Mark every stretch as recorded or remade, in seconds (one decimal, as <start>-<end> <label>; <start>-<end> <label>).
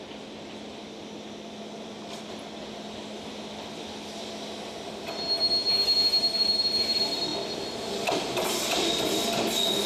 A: 0.0-9.9 recorded